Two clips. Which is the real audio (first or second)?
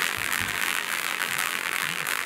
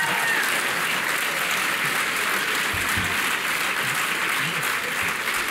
second